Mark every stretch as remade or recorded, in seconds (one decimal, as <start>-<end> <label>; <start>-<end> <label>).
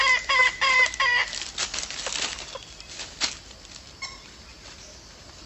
0.0-5.5 recorded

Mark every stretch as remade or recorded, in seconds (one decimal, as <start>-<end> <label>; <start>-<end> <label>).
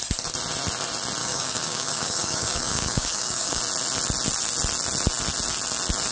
0.0-1.2 recorded; 1.2-3.6 remade; 3.6-6.1 recorded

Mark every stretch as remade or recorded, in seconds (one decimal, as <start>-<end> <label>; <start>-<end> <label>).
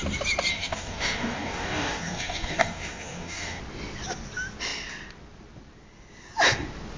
0.0-0.5 recorded; 0.5-3.6 remade; 3.6-7.0 recorded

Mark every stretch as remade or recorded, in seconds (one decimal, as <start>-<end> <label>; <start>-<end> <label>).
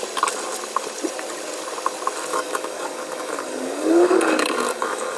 0.0-2.3 recorded; 2.3-5.2 remade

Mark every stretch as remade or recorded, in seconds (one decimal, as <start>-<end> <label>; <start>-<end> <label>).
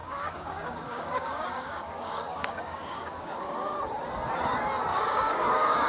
0.0-3.5 remade; 3.5-4.9 recorded; 4.9-5.9 remade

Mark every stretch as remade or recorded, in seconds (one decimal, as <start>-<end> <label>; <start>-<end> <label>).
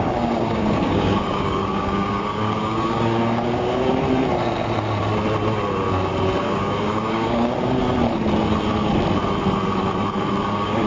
0.0-3.9 remade; 3.9-6.4 recorded; 6.4-7.8 remade; 7.8-10.4 recorded; 10.4-10.9 remade